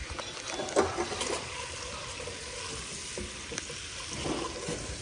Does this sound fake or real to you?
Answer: real